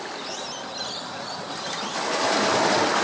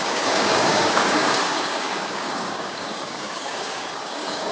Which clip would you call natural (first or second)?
first